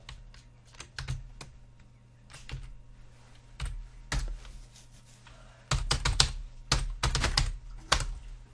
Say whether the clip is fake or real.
real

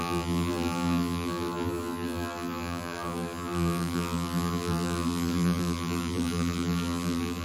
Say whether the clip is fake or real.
fake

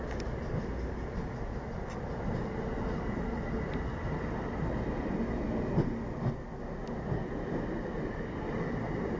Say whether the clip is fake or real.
real